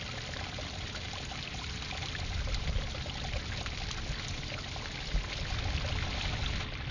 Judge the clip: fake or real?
real